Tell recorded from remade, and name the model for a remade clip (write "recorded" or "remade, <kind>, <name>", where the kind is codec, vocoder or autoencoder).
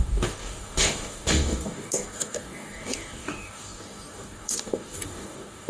remade, codec, DAC